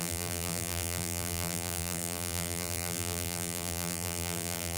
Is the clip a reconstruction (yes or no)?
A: yes